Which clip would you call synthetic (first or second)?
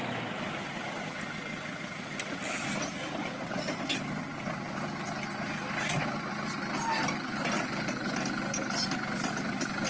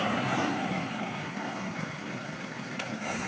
second